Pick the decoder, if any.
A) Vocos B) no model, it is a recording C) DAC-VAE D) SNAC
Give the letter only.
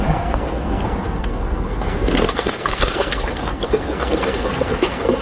D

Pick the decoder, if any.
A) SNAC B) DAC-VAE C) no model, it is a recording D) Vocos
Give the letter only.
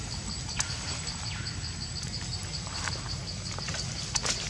C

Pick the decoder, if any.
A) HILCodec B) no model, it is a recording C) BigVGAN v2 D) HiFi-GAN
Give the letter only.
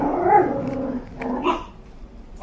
B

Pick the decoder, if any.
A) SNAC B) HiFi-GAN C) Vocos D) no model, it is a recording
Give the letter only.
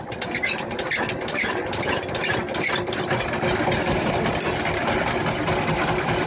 D